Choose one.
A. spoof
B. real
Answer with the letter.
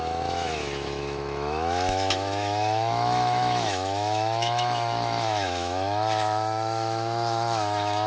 A